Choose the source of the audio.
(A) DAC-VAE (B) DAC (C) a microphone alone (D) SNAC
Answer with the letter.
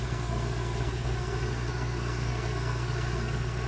D